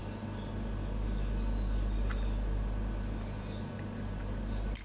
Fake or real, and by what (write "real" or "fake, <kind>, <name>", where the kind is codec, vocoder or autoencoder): real